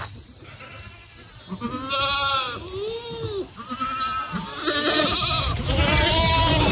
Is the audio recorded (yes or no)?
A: yes